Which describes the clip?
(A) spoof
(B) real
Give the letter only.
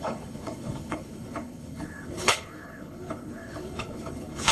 A